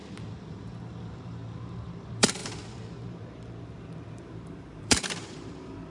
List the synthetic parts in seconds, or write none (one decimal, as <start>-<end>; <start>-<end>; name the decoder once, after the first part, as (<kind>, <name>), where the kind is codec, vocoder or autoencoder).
0.5-5.9 (vocoder, BigVGAN v2)